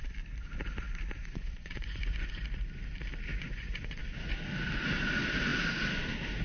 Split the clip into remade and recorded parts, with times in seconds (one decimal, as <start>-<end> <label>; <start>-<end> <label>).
0.0-1.2 recorded; 1.2-2.3 remade; 2.3-3.3 recorded; 3.3-4.0 remade; 4.0-6.4 recorded